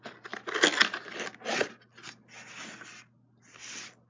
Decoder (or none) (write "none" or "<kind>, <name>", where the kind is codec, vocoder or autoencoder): none